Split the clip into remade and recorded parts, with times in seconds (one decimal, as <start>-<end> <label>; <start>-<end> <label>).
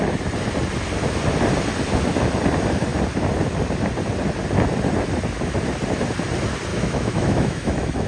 0.0-6.7 recorded; 6.7-8.1 remade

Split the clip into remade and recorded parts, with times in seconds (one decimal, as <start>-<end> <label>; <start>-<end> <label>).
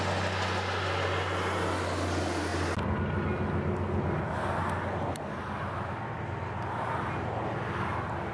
0.0-8.3 recorded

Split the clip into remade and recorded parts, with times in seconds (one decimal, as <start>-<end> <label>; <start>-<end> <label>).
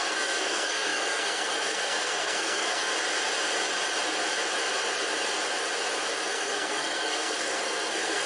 0.0-2.9 remade; 2.9-6.3 recorded; 6.3-8.3 remade